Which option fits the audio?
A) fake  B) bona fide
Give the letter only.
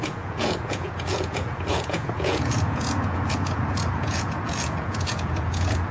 A